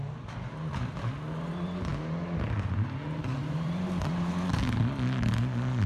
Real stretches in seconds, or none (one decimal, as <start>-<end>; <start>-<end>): 0.0-3.4; 4.6-5.9